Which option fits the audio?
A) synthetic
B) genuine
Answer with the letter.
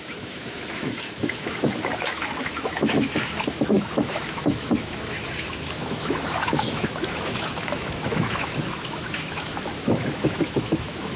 A